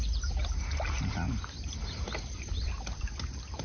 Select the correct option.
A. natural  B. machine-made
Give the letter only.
A